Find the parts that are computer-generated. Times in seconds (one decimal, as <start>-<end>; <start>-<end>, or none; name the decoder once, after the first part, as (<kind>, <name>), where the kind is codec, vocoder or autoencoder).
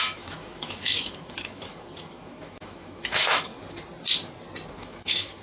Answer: 0.0-3.5 (autoencoder, DAC-VAE); 4.8-5.4